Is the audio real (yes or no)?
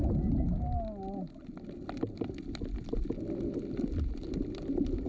yes